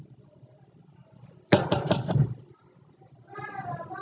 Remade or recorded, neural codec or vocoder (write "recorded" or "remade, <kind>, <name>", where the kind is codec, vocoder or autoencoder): remade, vocoder, BigVGAN v2